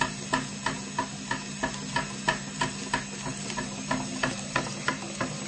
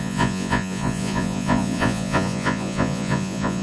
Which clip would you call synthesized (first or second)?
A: second